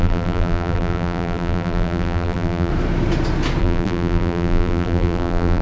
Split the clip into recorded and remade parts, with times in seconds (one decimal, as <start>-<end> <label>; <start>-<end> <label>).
0.0-2.7 remade; 2.7-3.6 recorded; 3.6-5.6 remade